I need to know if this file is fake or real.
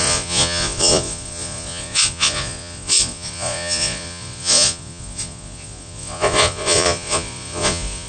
fake